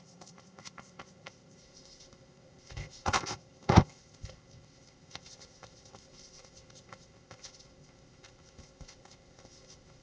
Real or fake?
fake